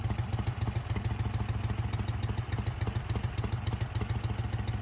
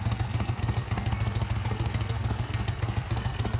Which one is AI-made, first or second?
second